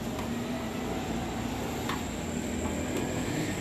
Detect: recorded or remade recorded